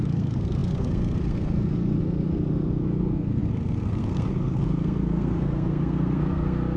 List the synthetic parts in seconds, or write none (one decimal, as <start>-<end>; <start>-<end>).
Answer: 0.0-6.8